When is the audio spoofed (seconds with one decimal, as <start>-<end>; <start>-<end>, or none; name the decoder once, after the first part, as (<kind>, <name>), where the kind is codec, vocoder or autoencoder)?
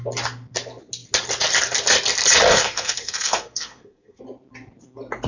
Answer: 2.5-4.2 (codec, SNAC)